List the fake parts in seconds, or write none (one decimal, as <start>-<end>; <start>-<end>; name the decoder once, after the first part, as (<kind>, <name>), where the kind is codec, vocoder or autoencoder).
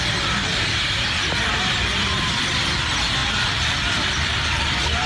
2.0-2.7 (vocoder, BigVGAN v2); 3.2-5.1